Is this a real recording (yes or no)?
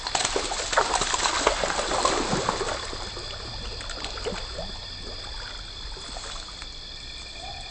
yes